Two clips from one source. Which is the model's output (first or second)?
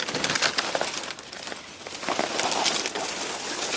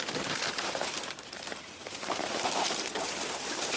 second